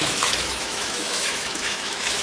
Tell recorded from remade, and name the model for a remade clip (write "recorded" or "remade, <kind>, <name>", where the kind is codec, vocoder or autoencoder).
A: remade, autoencoder, DAC-VAE